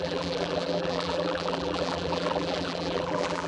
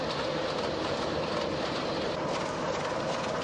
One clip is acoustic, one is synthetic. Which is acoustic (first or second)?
second